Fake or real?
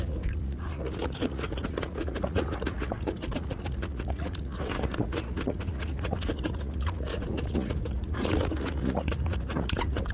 fake